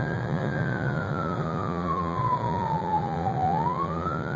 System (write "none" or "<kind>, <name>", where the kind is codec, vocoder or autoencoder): vocoder, Vocos